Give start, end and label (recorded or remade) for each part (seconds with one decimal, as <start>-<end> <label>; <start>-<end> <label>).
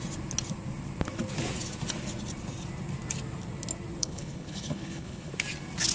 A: 0.0-4.0 recorded; 4.0-5.3 remade; 5.3-5.9 recorded